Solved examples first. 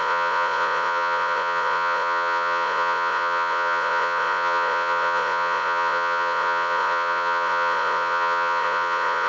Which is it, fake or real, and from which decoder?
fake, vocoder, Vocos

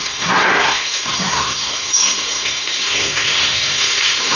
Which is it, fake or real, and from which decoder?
fake, codec, SNAC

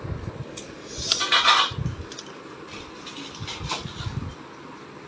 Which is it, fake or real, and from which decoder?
real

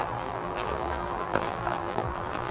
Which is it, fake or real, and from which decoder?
fake, vocoder, BigVGAN v2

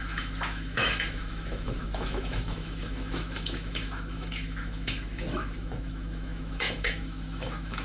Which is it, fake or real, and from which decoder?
fake, autoencoder, DAC-VAE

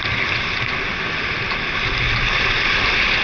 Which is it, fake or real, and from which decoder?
real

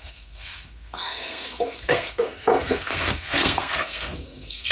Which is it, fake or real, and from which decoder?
fake, codec, SNAC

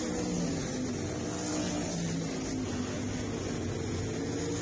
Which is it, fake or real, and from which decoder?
real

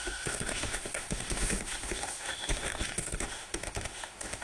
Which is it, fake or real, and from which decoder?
fake, autoencoder, DAC-VAE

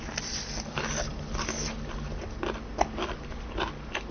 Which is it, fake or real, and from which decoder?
real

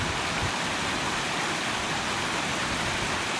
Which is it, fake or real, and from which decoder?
real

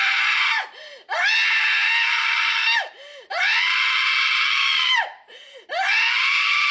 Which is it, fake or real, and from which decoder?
real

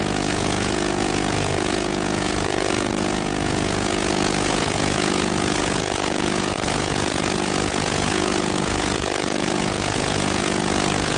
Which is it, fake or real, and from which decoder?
fake, vocoder, Vocos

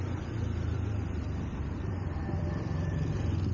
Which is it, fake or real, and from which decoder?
fake, vocoder, BigVGAN v2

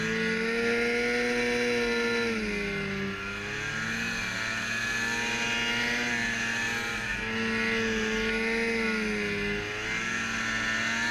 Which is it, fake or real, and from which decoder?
real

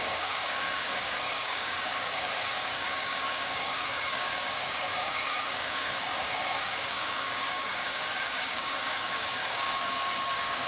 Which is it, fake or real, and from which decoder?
fake, codec, DAC